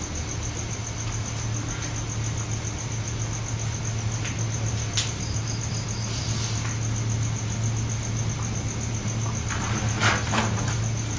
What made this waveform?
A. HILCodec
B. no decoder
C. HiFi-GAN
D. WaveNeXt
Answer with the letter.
B